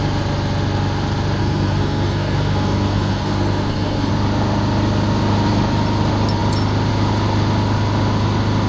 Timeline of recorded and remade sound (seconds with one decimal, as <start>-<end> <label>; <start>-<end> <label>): 0.0-1.4 recorded; 1.4-4.1 remade; 4.1-8.7 recorded